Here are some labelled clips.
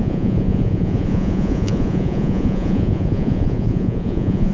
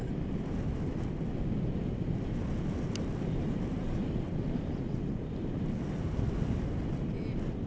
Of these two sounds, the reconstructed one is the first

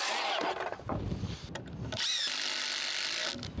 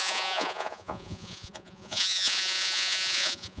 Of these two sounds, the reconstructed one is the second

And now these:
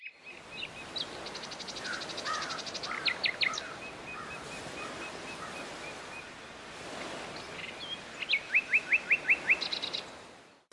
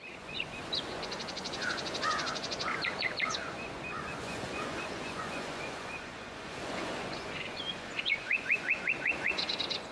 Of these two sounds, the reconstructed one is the second